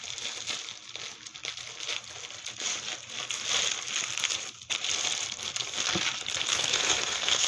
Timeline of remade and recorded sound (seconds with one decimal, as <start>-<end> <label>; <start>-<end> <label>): 0.0-6.5 recorded; 6.5-7.5 remade